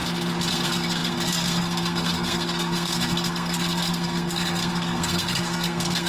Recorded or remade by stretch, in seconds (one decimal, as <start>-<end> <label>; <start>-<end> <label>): 0.0-0.5 recorded; 0.5-6.1 remade